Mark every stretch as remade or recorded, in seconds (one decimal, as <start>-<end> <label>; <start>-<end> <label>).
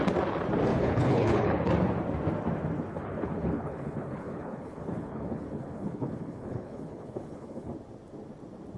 0.0-0.7 recorded; 0.7-1.7 remade; 1.7-2.9 recorded; 2.9-7.7 remade; 7.7-8.8 recorded